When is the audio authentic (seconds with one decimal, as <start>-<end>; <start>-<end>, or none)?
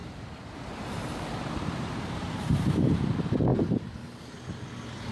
3.0-5.1